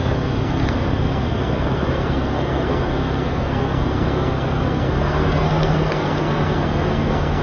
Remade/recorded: remade